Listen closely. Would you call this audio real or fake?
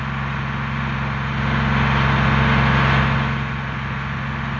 real